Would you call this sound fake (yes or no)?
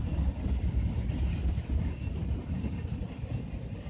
no